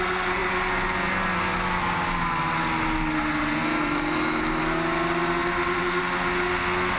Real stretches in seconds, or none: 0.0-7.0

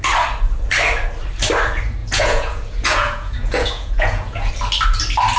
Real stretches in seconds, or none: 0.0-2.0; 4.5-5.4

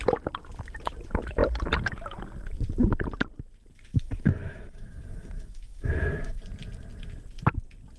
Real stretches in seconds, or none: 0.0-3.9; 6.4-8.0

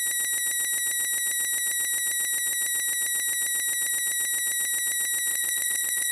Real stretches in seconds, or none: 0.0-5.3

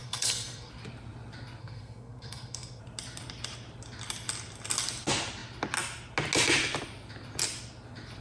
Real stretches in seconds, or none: 0.7-1.6; 2.8-8.2

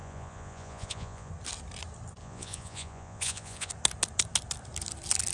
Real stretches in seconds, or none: 1.3-2.2; 3.7-5.3

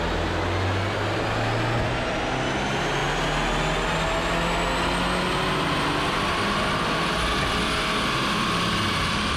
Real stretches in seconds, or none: 0.0-9.4